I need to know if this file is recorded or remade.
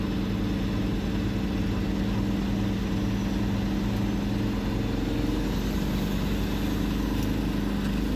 recorded